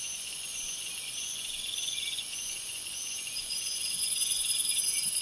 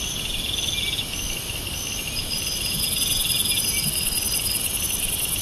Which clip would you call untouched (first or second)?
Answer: second